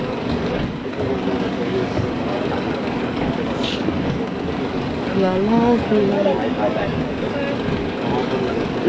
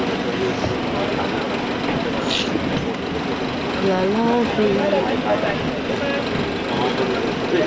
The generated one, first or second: first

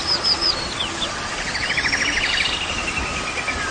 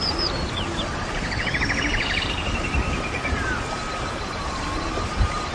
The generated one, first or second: second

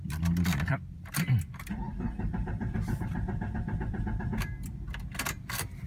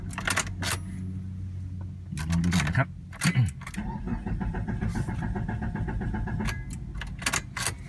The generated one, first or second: first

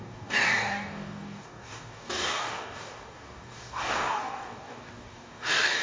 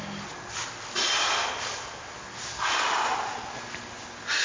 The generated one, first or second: first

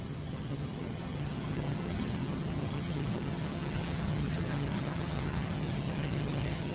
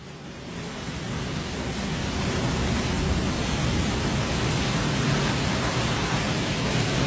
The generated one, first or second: first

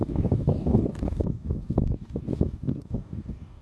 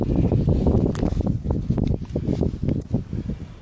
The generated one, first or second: first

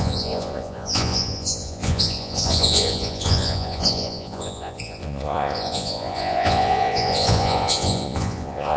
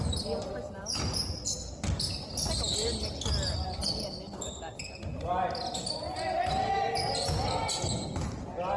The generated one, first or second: first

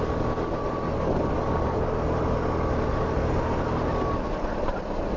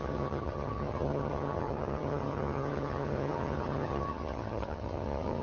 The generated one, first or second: second